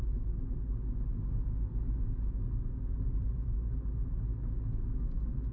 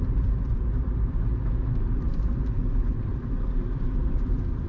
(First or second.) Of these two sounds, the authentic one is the first